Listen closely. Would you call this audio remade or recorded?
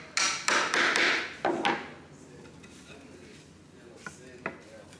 recorded